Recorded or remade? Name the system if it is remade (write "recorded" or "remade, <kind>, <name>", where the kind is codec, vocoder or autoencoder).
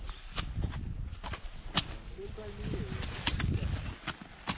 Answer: recorded